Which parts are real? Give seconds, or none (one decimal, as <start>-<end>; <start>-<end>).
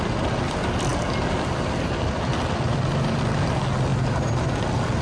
0.0-5.0